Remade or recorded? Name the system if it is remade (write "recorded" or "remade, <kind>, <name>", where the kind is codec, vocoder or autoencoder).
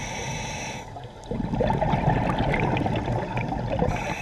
recorded